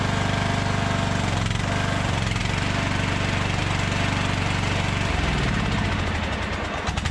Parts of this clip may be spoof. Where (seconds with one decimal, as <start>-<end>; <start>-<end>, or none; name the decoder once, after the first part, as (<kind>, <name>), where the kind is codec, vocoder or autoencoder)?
none